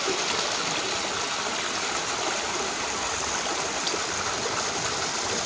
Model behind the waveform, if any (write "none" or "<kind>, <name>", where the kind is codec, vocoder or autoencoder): none